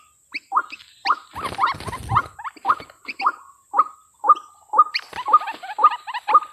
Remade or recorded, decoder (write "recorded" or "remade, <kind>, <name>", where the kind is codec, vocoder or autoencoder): recorded